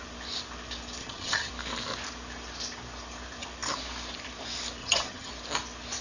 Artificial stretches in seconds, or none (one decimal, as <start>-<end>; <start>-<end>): 1.0-1.5; 4.8-5.3